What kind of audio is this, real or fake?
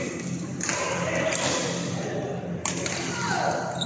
real